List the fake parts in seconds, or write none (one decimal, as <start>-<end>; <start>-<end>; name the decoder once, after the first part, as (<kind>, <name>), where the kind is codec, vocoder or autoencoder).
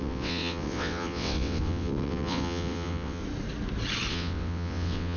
0.0-3.2 (vocoder, WaveNeXt); 4.1-5.2